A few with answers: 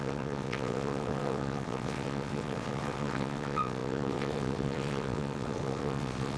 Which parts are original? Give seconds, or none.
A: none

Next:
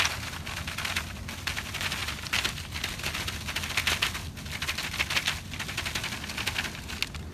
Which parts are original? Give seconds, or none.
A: 0.0-7.3

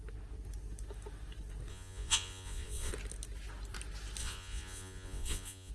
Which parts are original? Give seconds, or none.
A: 0.0-1.7; 2.9-4.2

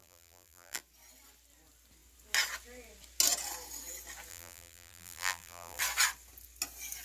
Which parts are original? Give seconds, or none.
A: 0.8-4.3; 5.8-7.0